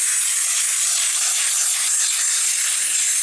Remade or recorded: recorded